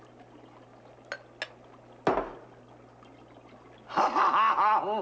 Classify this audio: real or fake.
real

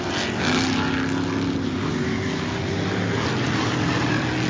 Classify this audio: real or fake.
real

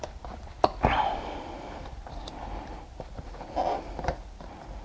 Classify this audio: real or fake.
real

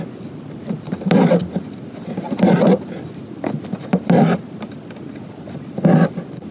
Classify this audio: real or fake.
real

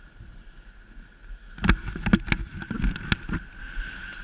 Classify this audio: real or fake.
real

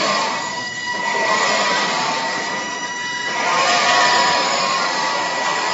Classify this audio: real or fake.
fake